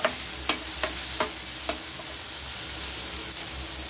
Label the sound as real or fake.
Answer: real